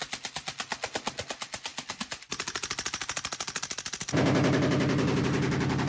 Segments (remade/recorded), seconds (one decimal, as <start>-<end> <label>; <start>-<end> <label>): 0.0-5.9 recorded